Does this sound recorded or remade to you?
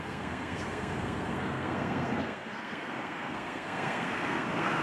remade